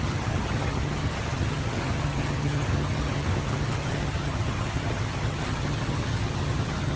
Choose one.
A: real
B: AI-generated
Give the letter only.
B